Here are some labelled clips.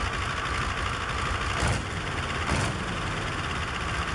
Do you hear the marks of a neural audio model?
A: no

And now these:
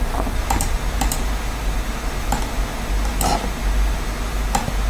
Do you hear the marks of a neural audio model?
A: no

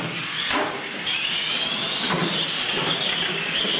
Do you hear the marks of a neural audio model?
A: no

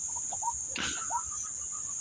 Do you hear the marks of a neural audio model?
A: no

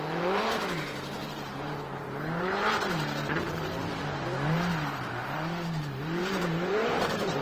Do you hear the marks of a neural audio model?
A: yes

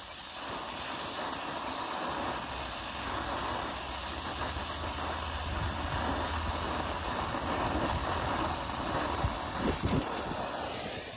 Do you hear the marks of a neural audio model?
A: no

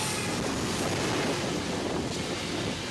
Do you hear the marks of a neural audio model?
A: no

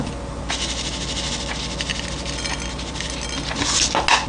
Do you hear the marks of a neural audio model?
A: no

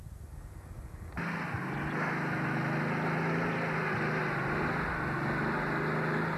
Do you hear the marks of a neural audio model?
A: no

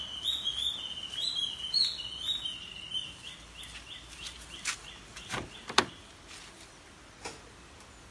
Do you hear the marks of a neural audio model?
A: no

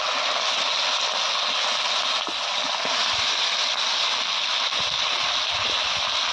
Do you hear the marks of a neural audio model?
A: no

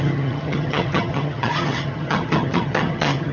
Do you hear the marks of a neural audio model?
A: yes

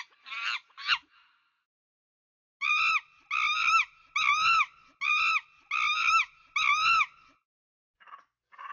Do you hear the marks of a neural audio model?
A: no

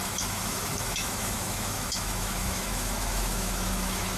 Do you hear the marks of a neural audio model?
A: yes